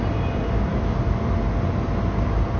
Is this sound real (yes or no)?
yes